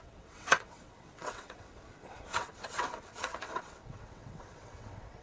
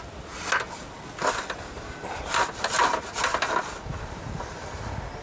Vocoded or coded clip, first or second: first